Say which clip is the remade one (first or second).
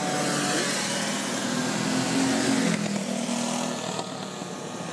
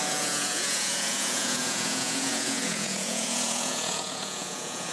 second